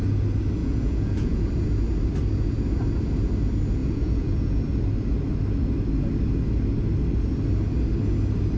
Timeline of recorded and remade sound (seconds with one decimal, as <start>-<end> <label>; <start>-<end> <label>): 0.0-0.6 recorded; 0.6-1.5 remade; 1.5-3.8 recorded; 3.8-4.6 remade; 4.6-8.6 recorded